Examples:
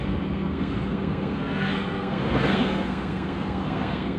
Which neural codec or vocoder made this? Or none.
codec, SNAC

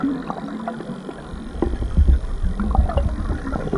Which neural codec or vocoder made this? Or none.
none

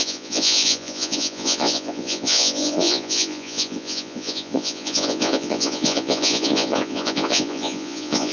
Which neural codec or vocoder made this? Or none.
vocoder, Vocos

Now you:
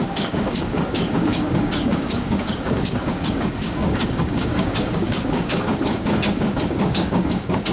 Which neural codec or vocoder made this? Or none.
codec, DAC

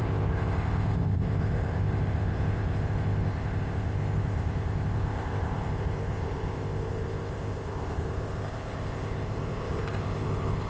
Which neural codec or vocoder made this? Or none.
codec, ZipCodec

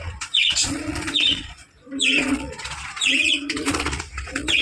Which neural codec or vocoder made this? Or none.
vocoder, Vocos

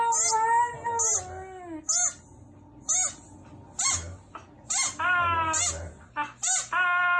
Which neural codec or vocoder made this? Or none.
none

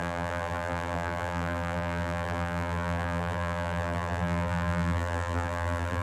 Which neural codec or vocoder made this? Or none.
vocoder, BigVGAN v2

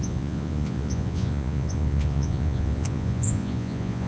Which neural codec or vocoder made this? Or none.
vocoder, Vocos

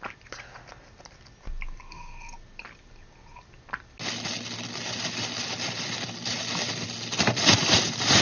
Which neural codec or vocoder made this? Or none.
none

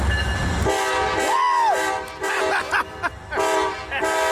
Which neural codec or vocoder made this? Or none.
none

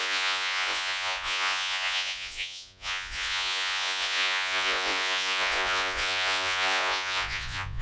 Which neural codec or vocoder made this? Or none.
vocoder, Vocos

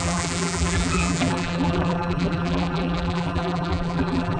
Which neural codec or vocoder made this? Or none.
vocoder, BigVGAN v2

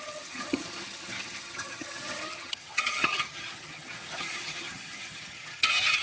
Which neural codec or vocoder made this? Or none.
vocoder, HiFi-GAN